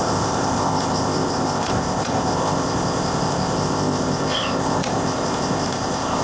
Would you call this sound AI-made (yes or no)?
yes